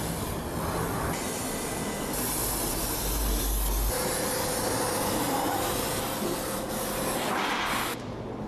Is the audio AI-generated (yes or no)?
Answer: no